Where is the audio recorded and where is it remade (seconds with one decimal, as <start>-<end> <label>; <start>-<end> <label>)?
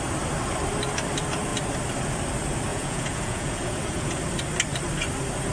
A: 0.0-2.7 recorded; 2.7-4.2 remade; 4.2-5.5 recorded